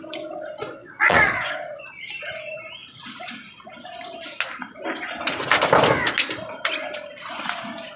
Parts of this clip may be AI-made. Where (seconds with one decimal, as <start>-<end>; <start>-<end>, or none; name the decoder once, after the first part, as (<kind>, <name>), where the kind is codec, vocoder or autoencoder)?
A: 0.8-1.8 (vocoder, Vocos)